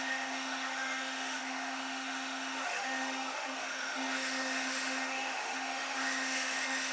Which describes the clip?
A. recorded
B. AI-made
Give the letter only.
B